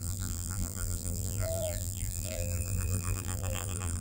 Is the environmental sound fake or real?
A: fake